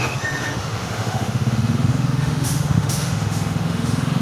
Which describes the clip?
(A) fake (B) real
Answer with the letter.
A